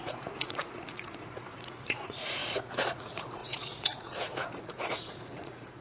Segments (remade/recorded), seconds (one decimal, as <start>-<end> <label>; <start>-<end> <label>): 0.0-5.8 remade